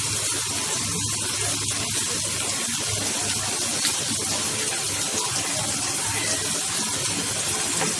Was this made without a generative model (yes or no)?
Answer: yes